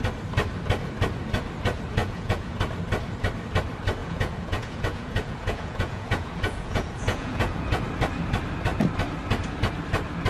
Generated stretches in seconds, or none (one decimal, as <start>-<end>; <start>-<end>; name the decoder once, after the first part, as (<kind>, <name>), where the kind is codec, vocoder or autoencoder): 2.0-2.5 (vocoder, Vocos); 4.0-7.8